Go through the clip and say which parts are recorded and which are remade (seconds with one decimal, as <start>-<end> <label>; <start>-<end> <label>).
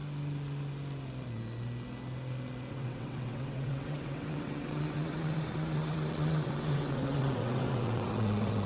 0.0-2.7 recorded; 2.7-8.7 remade